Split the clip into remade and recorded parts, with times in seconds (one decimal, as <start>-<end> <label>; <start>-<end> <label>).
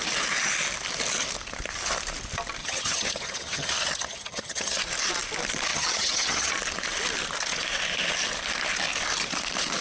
0.0-2.6 recorded; 2.6-4.8 remade; 4.8-5.7 recorded; 5.7-6.5 remade; 6.5-9.8 recorded